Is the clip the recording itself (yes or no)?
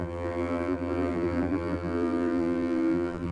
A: no